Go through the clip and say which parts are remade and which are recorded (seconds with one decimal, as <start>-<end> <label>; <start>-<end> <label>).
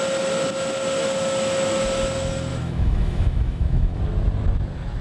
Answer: 0.0-2.5 recorded; 2.5-4.0 remade; 4.0-5.0 recorded